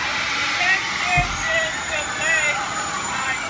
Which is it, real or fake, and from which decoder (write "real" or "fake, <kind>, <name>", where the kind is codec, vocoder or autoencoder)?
real